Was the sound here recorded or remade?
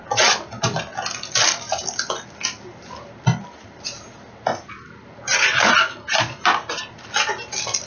recorded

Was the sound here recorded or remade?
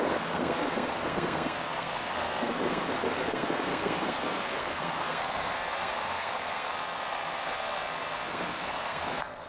remade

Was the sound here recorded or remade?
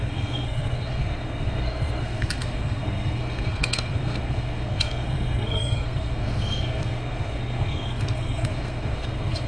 remade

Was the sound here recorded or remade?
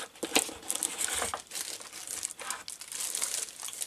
recorded